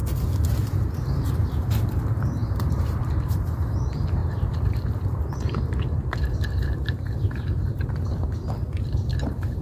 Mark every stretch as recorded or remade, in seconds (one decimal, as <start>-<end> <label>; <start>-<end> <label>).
0.0-9.6 remade